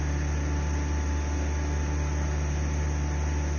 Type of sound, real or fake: real